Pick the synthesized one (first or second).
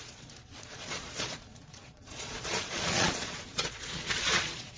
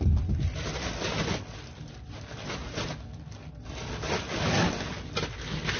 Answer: first